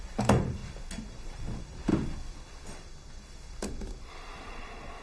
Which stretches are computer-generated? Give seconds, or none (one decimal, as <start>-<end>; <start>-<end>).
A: 0.0-0.6; 1.1-1.9